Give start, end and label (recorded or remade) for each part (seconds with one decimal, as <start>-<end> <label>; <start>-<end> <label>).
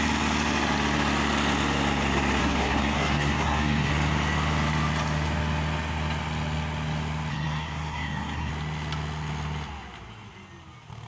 0.0-2.4 recorded; 2.4-3.9 remade; 3.9-7.3 recorded; 7.3-8.5 remade; 8.5-11.1 recorded